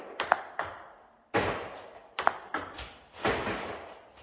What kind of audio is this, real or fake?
real